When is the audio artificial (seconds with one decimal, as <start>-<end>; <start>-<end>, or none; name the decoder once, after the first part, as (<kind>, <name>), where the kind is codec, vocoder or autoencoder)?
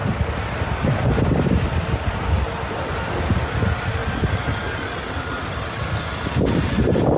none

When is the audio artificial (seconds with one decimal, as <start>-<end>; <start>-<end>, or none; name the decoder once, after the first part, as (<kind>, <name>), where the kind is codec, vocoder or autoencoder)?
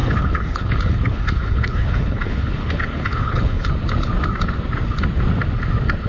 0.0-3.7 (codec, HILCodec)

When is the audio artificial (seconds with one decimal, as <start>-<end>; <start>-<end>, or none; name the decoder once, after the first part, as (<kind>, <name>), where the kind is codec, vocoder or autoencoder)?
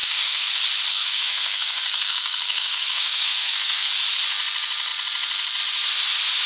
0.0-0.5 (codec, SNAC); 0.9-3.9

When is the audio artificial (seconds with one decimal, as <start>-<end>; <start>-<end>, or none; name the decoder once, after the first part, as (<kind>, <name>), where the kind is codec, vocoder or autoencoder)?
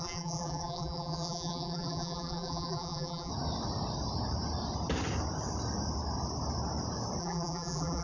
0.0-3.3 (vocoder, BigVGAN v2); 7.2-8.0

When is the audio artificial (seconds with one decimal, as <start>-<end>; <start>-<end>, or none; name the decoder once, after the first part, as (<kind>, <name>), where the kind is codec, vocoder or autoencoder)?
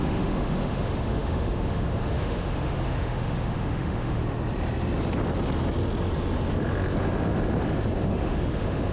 0.0-4.2 (autoencoder, DAC-VAE); 8.0-8.9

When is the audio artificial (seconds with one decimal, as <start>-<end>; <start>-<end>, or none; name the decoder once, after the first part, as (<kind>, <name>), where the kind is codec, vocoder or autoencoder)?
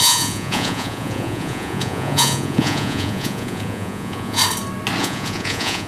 0.0-4.4 (vocoder, Vocos); 5.0-5.9